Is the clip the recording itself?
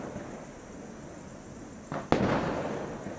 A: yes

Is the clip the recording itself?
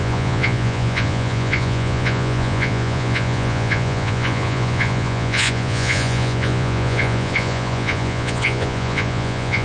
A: no